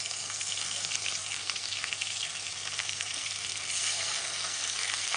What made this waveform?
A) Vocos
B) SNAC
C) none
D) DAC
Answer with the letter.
B